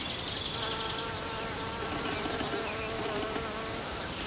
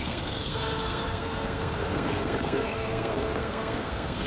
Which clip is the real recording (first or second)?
first